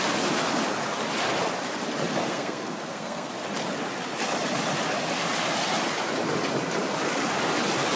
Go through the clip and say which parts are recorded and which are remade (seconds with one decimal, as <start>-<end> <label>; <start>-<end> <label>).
0.0-2.2 recorded; 2.2-3.3 remade; 3.3-8.0 recorded